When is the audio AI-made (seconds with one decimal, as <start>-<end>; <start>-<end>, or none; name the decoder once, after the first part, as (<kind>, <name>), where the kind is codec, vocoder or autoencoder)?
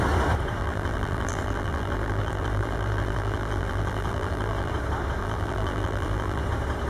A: 0.6-4.7 (vocoder, BigVGAN v2); 5.2-6.4